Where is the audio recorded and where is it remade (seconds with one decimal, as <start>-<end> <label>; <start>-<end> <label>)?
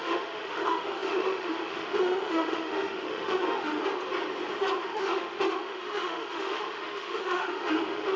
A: 0.0-3.8 remade; 3.8-4.8 recorded; 4.8-8.2 remade